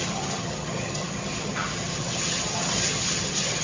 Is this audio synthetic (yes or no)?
yes